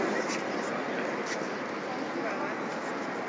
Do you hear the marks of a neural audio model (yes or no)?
no